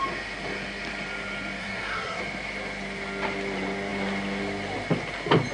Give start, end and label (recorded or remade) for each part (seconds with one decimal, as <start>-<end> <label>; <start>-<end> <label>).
0.0-1.6 recorded; 1.6-2.2 remade; 2.2-5.5 recorded